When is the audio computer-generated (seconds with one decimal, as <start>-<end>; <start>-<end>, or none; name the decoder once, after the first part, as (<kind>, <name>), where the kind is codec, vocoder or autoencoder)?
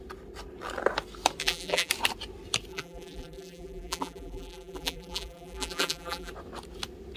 1.4-1.9 (vocoder, BigVGAN v2); 2.7-6.3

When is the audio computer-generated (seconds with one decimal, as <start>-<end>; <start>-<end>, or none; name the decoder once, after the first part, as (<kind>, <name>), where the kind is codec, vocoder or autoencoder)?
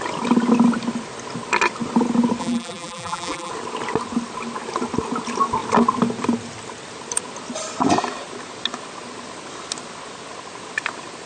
2.4-3.5 (vocoder, BigVGAN v2)